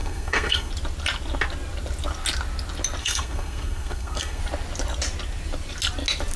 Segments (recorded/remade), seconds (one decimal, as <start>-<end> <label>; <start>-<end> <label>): 0.0-0.7 remade; 0.7-3.0 recorded; 3.0-4.4 remade; 4.4-6.4 recorded